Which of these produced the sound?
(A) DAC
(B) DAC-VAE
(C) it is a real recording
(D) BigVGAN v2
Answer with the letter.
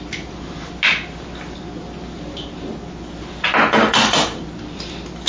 C